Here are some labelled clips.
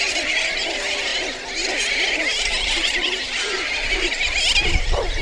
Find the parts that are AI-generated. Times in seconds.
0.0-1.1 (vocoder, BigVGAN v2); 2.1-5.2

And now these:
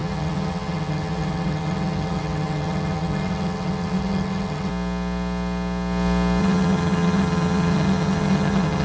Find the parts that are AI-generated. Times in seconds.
0.0-4.7 (vocoder, HiFi-GAN); 6.4-8.8

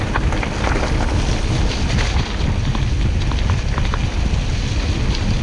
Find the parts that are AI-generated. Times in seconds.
none

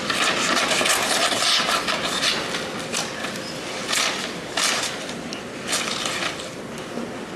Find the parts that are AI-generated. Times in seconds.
none